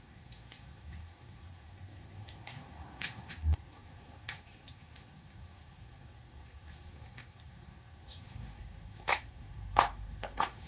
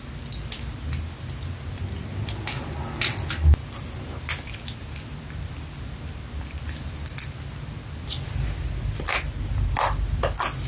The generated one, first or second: first